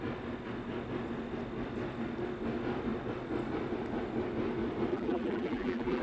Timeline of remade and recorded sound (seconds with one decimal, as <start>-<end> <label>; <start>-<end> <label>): 0.0-4.9 recorded; 4.9-6.0 remade